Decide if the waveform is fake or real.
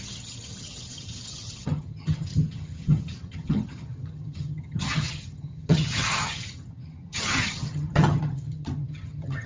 fake